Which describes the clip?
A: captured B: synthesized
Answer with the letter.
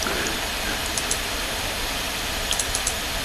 B